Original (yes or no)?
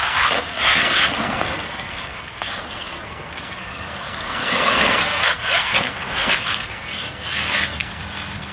no